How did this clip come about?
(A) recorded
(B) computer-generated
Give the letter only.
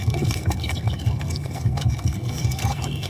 B